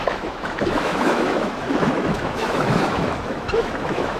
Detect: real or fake fake